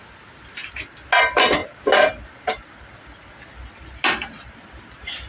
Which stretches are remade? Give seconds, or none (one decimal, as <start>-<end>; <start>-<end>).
none